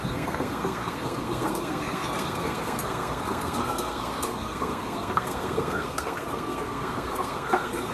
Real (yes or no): no